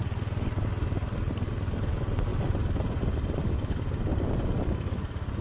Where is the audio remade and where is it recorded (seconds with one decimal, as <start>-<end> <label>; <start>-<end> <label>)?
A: 0.0-5.4 recorded